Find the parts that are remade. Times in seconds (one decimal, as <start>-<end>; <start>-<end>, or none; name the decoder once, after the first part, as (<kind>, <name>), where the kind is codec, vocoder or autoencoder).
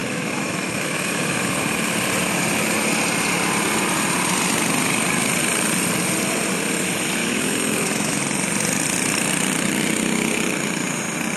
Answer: 0.0-1.4 (autoencoder, DAC-VAE); 7.2-8.2